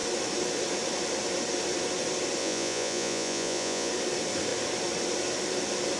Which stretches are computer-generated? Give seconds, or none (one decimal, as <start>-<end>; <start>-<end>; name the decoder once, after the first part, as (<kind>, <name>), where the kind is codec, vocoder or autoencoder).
2.4-3.9 (vocoder, Vocos)